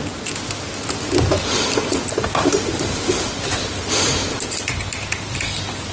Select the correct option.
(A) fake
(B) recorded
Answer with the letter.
B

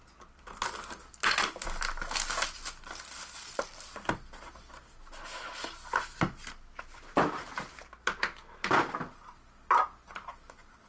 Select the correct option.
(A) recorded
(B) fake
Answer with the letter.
A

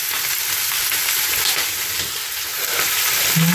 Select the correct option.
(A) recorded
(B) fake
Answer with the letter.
A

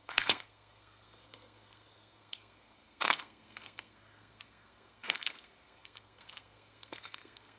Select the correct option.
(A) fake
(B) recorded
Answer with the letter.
A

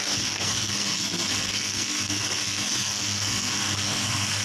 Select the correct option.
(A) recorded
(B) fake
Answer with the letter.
B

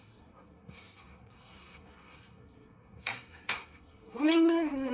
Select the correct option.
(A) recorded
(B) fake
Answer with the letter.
B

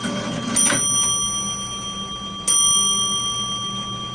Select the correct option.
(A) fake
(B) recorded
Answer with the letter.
B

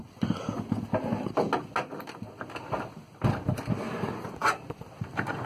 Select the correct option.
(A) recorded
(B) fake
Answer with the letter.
A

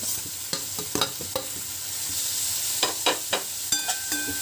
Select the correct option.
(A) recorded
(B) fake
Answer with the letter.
A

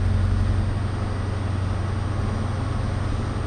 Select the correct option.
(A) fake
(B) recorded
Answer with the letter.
B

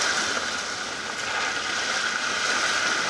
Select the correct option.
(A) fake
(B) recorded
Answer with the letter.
B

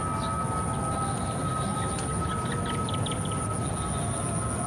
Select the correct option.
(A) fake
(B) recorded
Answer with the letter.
B